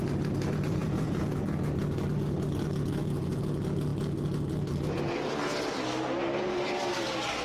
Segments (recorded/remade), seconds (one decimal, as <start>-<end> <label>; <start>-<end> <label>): 0.0-0.8 recorded; 0.8-1.5 remade; 1.5-3.0 recorded; 3.0-3.5 remade; 3.5-7.4 recorded